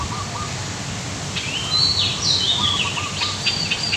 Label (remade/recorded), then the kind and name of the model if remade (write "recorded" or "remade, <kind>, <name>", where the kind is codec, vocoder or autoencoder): recorded